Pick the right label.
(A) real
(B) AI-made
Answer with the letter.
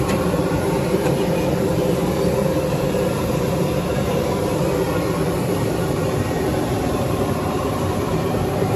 B